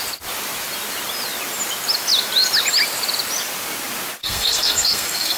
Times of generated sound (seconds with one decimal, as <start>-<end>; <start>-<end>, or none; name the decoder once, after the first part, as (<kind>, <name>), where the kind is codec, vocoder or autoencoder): 4.2-5.4 (codec, SNAC)